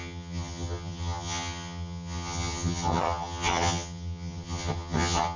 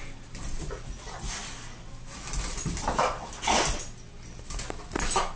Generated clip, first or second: first